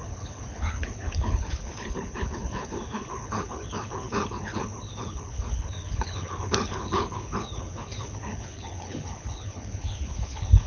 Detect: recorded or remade remade